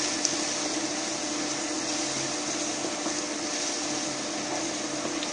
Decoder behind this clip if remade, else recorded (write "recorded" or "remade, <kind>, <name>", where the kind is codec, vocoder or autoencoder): recorded